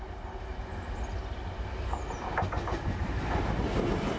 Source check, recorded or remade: recorded